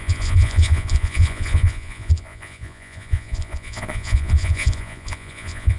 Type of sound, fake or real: fake